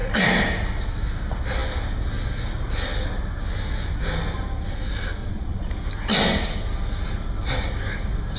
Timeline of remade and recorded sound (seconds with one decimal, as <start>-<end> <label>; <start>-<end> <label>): 0.0-5.2 recorded; 5.2-5.7 remade; 5.7-8.4 recorded